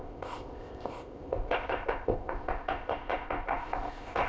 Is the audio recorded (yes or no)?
no